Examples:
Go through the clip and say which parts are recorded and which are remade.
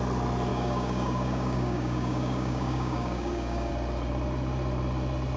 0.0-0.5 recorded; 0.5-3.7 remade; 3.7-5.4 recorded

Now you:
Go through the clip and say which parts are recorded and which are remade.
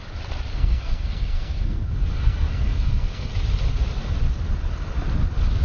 0.0-0.5 recorded; 0.5-3.3 remade; 3.3-5.6 recorded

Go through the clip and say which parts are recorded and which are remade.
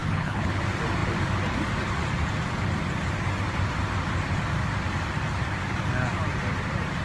0.0-0.6 remade; 0.6-7.0 recorded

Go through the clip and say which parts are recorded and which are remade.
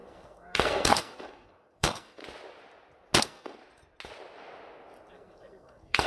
0.0-2.2 remade; 2.2-3.2 recorded; 3.2-3.6 remade; 3.6-5.1 recorded; 5.1-6.1 remade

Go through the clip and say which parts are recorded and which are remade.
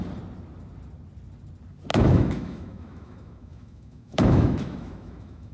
0.0-1.9 recorded; 1.9-5.5 remade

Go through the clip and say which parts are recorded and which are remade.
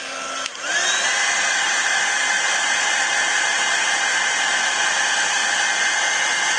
0.0-6.6 recorded